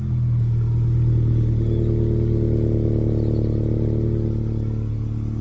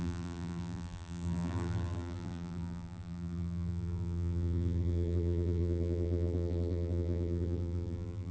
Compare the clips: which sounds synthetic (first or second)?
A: second